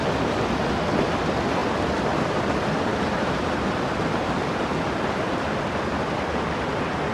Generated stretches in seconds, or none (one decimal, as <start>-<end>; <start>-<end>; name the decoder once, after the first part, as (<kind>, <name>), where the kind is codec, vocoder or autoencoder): 1.6-3.3 (vocoder, BigVGAN v2)